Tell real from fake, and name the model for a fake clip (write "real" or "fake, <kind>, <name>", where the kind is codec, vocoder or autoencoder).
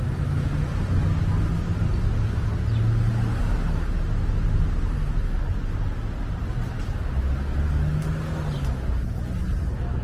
real